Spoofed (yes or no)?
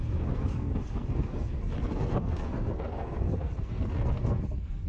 yes